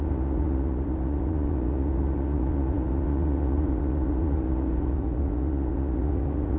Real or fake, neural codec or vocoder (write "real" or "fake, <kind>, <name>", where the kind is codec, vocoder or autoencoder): fake, vocoder, Vocos